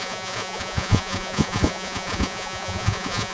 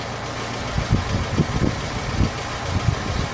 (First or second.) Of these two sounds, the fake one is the first